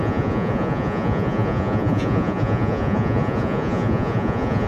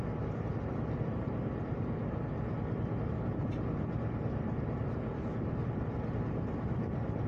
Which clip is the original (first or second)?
second